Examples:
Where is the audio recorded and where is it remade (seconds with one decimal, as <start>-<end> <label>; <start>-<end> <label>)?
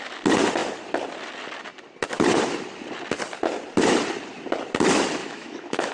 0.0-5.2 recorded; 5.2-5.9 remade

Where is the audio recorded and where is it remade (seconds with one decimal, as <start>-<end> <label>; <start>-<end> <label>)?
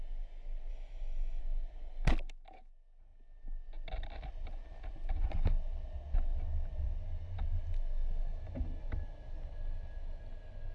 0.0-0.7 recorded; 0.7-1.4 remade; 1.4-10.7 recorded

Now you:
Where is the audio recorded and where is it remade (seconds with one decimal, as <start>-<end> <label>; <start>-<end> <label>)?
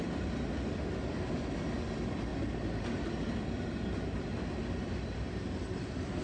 0.0-6.2 recorded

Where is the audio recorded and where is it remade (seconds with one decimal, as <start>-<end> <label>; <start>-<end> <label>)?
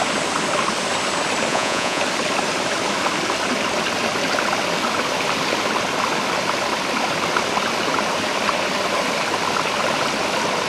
0.0-1.5 recorded; 1.5-2.0 remade; 2.0-10.7 recorded